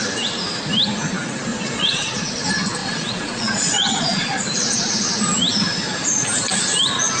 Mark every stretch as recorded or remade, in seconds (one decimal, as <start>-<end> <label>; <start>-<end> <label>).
0.0-1.5 recorded; 1.5-2.4 remade; 2.4-2.8 recorded; 2.8-4.4 remade; 4.4-7.2 recorded